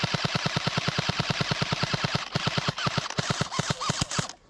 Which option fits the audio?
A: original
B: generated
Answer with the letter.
A